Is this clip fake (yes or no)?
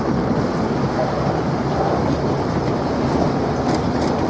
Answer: no